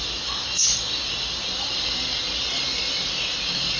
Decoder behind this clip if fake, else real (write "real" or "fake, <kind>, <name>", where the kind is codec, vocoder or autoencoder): real